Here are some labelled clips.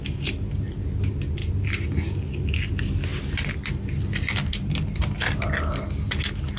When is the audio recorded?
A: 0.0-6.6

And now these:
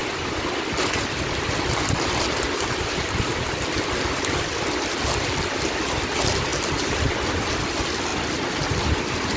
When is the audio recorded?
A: 0.0-9.4

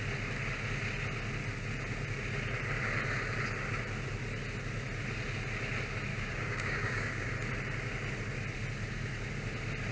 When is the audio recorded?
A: 0.0-6.1; 7.3-9.9

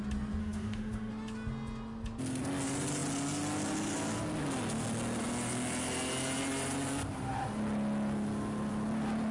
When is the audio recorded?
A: 0.0-0.4; 1.1-9.3

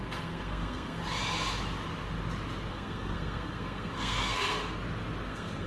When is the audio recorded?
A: 1.0-2.7; 4.6-5.3